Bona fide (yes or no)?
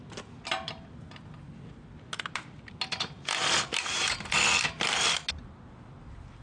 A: yes